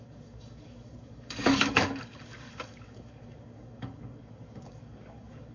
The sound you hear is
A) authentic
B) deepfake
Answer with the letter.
B